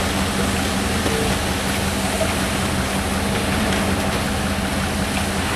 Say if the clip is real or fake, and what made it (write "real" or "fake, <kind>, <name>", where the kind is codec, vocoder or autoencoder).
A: real